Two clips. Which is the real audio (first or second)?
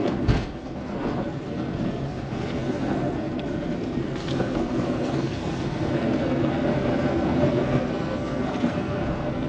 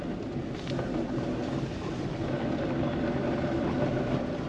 second